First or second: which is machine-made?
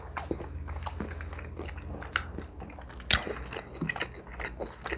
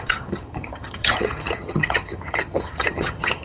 second